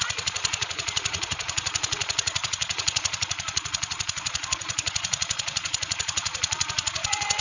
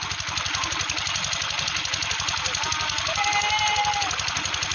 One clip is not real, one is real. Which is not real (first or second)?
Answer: first